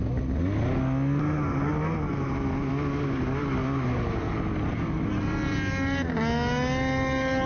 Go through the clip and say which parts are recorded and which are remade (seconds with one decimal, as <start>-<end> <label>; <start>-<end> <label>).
0.0-7.5 recorded